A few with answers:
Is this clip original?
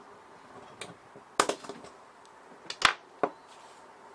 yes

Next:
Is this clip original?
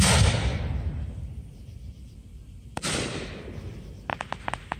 yes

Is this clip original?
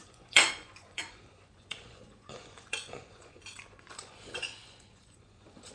no